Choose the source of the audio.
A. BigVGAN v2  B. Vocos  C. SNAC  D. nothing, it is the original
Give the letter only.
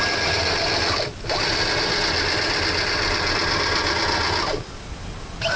D